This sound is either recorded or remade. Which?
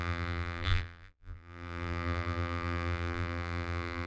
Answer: remade